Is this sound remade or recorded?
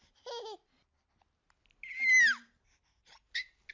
recorded